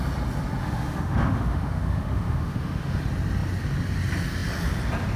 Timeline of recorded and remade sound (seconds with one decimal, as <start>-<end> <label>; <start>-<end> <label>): 0.0-0.6 recorded; 0.6-3.0 remade; 3.0-5.2 recorded